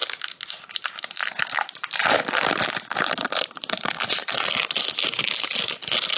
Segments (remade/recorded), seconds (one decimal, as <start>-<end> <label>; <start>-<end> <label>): 0.0-1.2 recorded; 1.2-4.8 remade; 4.8-6.2 recorded